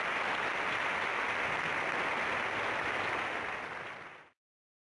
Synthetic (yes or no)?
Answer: no